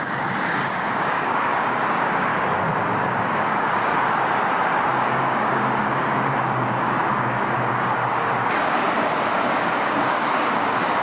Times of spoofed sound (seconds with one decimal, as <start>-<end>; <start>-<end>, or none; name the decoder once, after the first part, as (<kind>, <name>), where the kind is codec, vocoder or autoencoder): 0.0-2.3 (codec, DAC); 3.2-3.9; 4.9-11.0